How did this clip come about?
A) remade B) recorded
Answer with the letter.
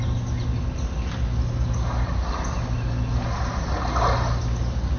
B